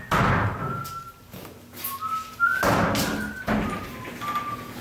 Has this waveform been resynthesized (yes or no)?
no